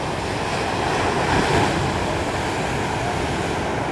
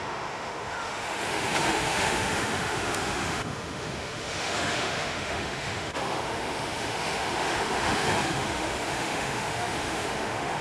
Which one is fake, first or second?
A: second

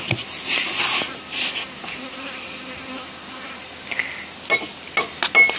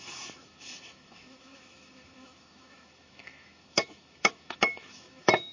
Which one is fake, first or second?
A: second